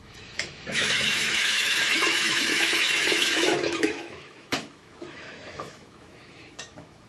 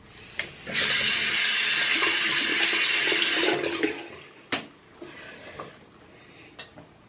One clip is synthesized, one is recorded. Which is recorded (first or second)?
second